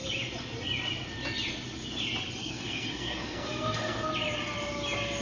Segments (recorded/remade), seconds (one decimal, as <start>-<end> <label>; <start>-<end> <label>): 0.0-2.4 recorded; 2.4-4.1 remade; 4.1-5.2 recorded